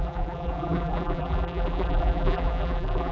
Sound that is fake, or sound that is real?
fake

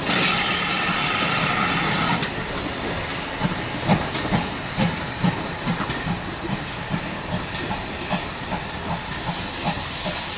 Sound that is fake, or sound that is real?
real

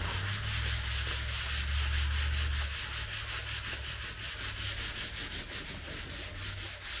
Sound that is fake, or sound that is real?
real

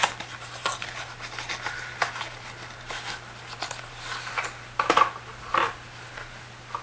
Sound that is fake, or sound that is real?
real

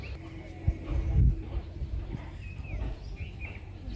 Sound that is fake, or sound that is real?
fake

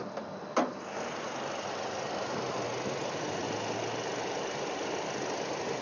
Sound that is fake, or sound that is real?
real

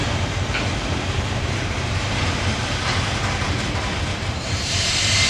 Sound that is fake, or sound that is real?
fake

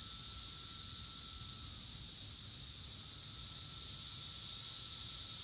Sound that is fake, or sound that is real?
real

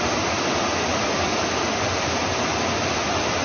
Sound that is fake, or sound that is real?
real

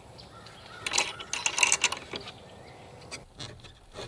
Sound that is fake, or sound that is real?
real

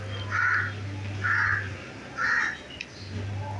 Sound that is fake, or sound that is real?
real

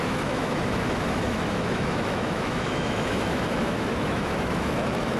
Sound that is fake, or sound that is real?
fake